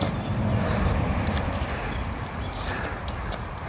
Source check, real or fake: fake